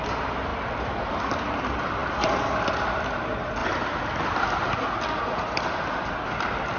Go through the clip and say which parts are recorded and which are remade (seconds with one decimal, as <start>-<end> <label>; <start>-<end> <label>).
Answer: 0.0-6.8 recorded